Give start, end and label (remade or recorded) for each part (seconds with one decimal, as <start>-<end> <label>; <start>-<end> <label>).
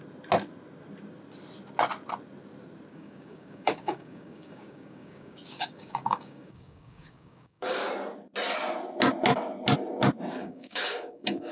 0.0-2.9 recorded; 2.9-7.9 remade; 7.9-10.4 recorded; 10.4-11.5 remade